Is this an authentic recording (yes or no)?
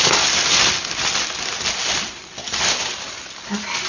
yes